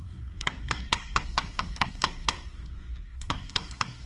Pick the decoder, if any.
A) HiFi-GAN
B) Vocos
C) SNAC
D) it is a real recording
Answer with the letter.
C